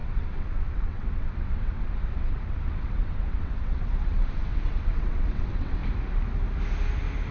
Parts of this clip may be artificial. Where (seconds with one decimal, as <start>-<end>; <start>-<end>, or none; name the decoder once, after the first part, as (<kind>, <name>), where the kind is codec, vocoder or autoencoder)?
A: 0.0-5.8 (vocoder, WaveNeXt)